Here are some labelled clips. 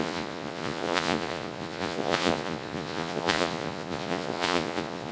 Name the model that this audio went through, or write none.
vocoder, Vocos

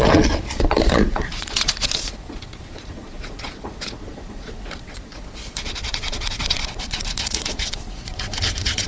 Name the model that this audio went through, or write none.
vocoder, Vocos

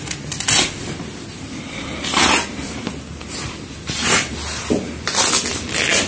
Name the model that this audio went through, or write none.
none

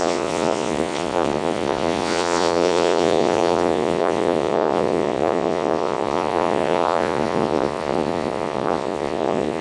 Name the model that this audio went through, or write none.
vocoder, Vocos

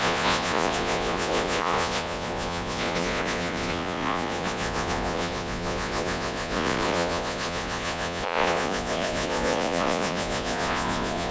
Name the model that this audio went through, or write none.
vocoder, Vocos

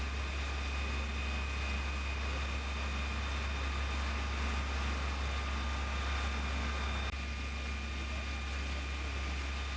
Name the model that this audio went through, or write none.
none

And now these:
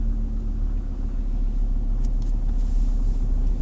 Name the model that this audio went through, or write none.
none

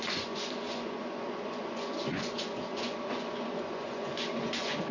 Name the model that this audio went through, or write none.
vocoder, Vocos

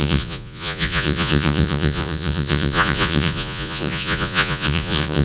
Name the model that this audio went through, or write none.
vocoder, Vocos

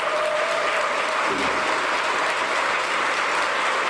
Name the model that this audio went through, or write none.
none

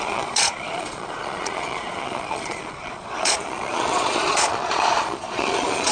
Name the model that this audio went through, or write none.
vocoder, Vocos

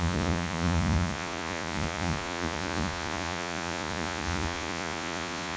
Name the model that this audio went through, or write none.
vocoder, Vocos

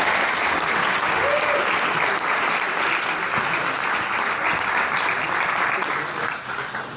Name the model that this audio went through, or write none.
none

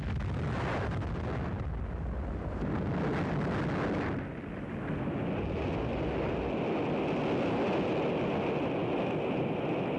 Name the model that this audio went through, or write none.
none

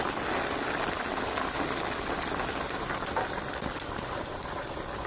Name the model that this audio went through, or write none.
none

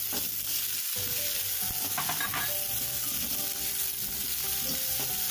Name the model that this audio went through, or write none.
none